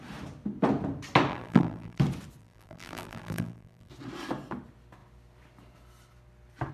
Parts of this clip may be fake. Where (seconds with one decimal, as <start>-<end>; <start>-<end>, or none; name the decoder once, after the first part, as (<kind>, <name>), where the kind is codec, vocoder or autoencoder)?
1.3-2.0 (vocoder, BigVGAN v2); 2.4-3.9